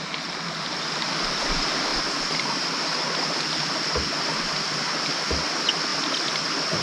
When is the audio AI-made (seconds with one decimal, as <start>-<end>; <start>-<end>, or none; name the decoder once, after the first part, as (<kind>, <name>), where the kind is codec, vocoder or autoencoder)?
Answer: none